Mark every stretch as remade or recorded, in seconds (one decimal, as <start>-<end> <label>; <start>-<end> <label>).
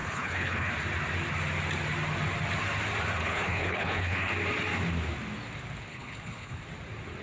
0.0-0.7 remade; 0.7-3.2 recorded; 3.2-4.3 remade; 4.3-5.9 recorded; 5.9-6.6 remade; 6.6-7.2 recorded